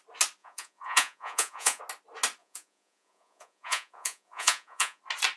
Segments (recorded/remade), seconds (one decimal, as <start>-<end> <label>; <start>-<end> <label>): 0.0-0.4 recorded; 0.4-1.8 remade; 1.8-2.4 recorded; 2.4-5.0 remade; 5.0-5.4 recorded